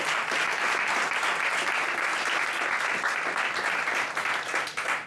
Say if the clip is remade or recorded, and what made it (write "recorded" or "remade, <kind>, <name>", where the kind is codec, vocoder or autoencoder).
recorded